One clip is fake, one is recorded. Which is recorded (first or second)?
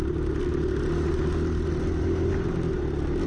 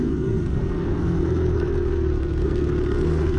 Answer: first